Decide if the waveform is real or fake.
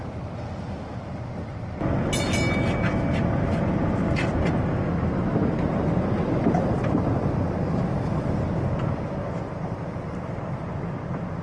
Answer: real